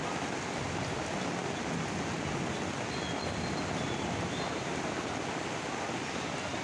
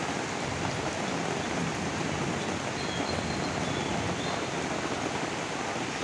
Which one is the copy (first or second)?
second